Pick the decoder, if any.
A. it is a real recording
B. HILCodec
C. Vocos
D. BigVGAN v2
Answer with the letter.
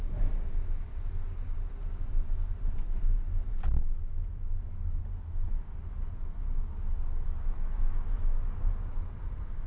A